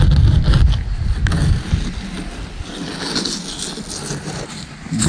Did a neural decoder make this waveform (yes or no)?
no